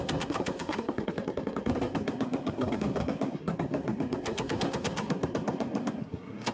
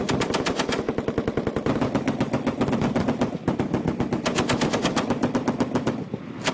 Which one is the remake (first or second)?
first